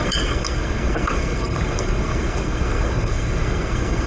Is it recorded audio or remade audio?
remade